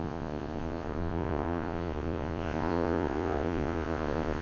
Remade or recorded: remade